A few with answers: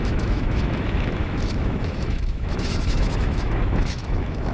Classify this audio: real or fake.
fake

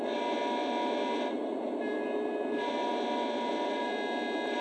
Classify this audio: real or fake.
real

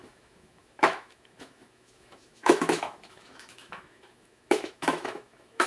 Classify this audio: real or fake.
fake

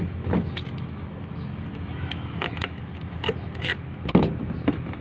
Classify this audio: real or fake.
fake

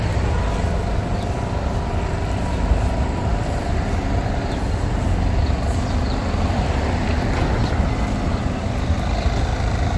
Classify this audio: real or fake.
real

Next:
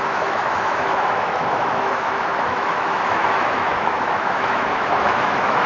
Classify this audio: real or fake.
fake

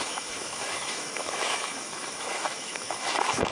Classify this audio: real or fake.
fake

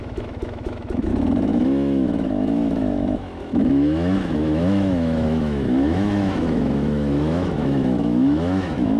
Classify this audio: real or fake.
fake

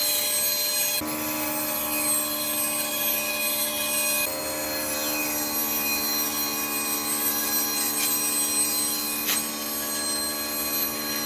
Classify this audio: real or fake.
real